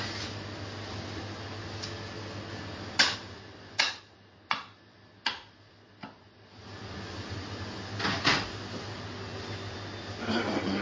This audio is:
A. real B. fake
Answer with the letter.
A